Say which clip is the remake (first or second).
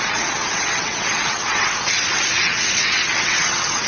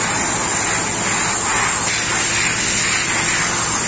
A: first